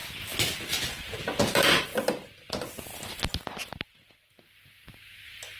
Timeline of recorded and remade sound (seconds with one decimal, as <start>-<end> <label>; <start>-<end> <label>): 0.0-5.6 recorded